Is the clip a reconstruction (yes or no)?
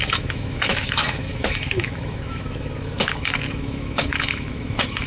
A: yes